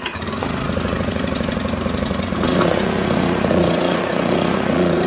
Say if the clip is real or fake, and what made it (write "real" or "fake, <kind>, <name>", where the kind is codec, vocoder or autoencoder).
fake, vocoder, Vocos